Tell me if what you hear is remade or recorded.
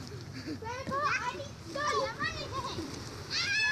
recorded